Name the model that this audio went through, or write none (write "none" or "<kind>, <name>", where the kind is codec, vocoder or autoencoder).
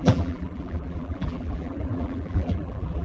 vocoder, BigVGAN v2